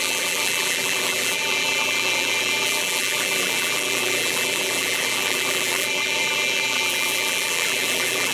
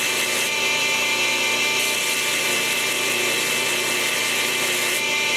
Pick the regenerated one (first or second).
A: first